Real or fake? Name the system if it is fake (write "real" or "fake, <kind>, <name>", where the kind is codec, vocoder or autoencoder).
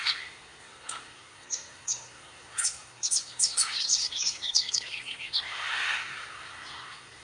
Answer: fake, codec, SNAC